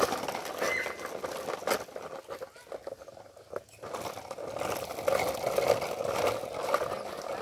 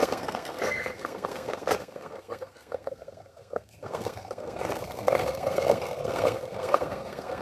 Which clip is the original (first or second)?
first